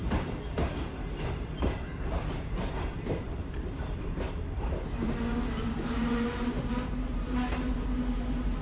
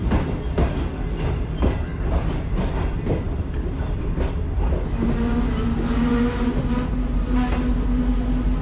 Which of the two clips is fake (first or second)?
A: first